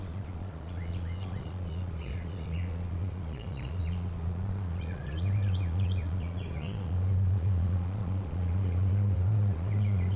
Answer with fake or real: fake